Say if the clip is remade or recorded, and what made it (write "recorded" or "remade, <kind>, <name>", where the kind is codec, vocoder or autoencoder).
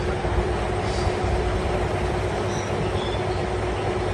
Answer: recorded